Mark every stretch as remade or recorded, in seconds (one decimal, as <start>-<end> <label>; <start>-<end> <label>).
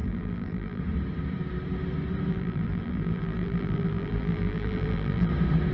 0.0-0.8 remade; 0.8-2.3 recorded; 2.3-5.3 remade; 5.3-5.7 recorded